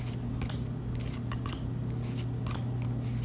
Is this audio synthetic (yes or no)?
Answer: no